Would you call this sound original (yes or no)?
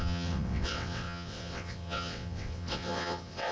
no